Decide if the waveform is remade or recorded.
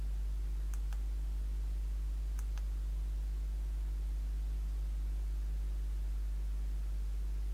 recorded